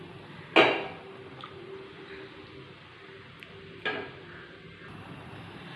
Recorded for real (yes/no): yes